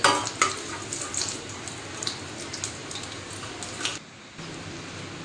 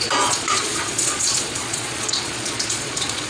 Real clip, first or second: first